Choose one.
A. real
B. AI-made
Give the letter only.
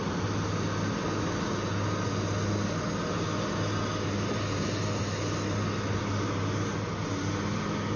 A